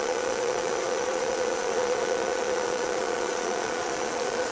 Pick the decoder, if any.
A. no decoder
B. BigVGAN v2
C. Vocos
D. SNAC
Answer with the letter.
C